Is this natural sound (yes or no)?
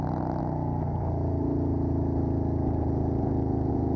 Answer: yes